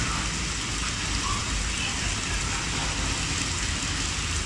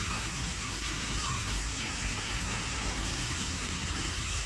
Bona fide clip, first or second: first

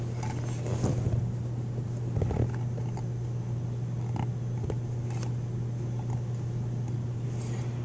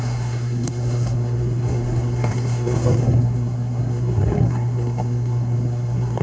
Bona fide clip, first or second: first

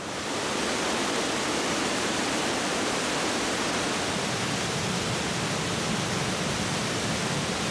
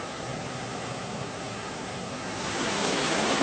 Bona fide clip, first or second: first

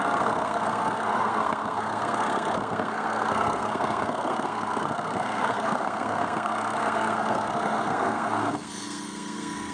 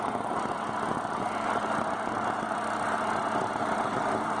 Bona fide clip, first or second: second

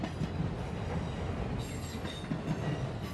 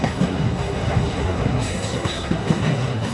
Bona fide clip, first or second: first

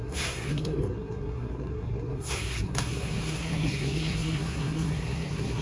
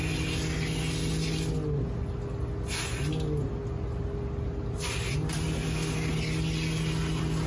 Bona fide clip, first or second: second